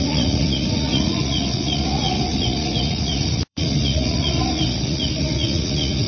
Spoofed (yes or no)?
yes